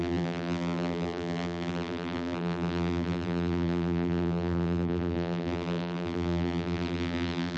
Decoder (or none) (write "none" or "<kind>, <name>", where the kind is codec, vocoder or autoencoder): vocoder, BigVGAN v2